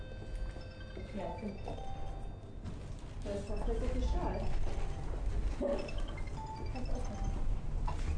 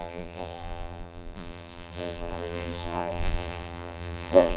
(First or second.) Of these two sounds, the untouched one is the first